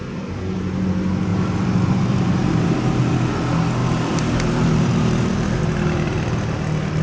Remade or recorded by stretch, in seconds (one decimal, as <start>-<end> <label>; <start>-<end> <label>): 0.0-1.3 recorded; 1.3-3.0 remade; 3.0-3.8 recorded; 3.8-5.6 remade; 5.6-7.0 recorded